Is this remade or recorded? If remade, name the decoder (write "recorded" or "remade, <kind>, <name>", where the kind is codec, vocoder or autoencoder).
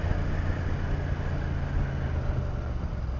recorded